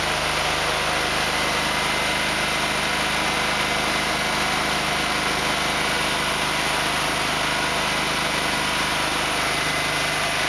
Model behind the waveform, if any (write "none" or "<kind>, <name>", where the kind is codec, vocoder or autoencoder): none